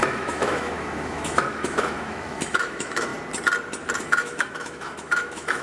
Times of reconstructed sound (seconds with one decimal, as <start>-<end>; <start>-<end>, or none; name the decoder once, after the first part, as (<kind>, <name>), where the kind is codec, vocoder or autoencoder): 0.0-3.1 (autoencoder, DAC-VAE); 4.0-5.6